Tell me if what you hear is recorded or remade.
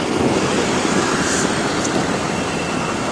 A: recorded